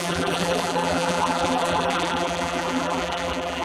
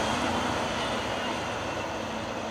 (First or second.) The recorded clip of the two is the second